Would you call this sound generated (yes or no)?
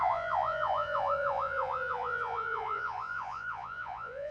yes